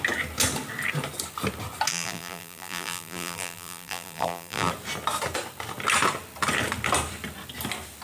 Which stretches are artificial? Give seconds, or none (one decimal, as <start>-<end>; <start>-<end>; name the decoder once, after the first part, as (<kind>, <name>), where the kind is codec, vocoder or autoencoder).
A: 1.9-4.7 (vocoder, BigVGAN v2)